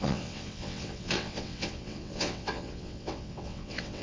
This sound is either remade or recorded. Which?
remade